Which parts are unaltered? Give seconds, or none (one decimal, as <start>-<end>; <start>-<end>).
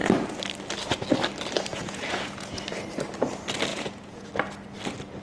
0.0-1.7; 2.6-3.7; 4.3-5.2